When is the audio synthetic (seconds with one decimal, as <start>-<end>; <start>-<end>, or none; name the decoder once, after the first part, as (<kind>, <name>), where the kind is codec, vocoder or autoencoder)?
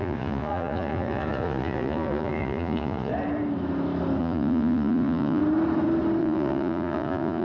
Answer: 0.0-3.1 (vocoder, Vocos); 4.2-5.4; 6.2-7.4